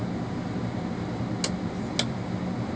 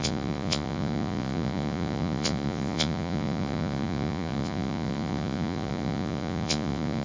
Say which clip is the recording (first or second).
first